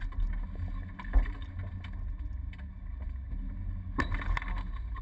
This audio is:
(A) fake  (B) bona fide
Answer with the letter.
B